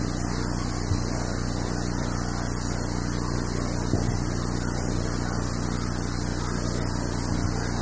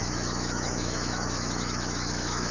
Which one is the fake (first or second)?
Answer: second